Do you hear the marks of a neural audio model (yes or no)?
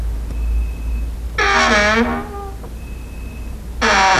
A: no